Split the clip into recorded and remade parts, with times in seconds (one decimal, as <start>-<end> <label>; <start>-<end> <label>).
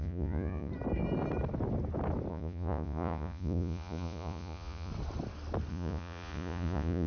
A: 0.0-0.7 remade; 0.7-2.3 recorded; 2.3-4.9 remade; 4.9-5.7 recorded; 5.7-7.1 remade